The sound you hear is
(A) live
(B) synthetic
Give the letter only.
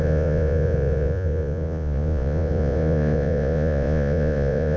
B